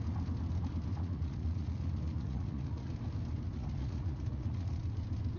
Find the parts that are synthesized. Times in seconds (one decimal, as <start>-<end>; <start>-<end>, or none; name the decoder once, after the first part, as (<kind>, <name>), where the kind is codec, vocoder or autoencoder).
0.9-2.9 (vocoder, Vocos); 3.5-4.8

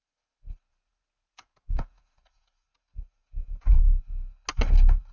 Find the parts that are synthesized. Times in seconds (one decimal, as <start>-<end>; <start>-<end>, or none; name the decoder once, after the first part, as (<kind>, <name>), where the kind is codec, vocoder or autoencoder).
0.7-3.8 (vocoder, Vocos)

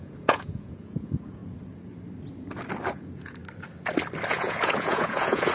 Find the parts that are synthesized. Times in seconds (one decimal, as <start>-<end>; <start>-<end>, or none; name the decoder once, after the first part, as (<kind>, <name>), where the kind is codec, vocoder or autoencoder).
0.0-1.4 (vocoder, Vocos); 2.9-3.4; 4.3-5.5

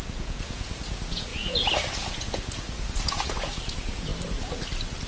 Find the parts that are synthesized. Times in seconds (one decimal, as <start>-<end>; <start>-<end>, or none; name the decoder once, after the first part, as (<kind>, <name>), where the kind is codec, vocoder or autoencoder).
0.0-4.1 (vocoder, Vocos)

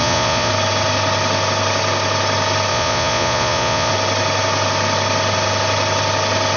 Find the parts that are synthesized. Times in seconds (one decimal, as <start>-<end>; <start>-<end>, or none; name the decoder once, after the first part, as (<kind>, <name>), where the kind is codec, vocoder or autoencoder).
0.0-0.5 (vocoder, Vocos); 2.7-3.9

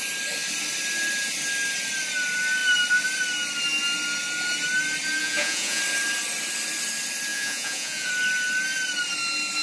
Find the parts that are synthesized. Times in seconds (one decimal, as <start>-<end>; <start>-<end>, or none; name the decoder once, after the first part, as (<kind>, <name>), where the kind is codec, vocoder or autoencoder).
5.2-5.8 (vocoder, Vocos); 7.3-8.1

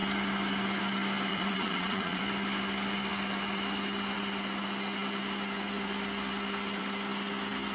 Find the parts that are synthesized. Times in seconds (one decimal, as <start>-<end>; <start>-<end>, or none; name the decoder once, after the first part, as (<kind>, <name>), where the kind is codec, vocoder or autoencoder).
1.3-2.2 (vocoder, Vocos)

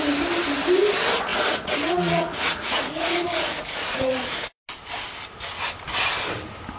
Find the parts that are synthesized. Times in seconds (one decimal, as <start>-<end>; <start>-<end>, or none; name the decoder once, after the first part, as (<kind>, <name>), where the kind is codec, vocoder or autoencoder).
1.3-4.6 (vocoder, Vocos)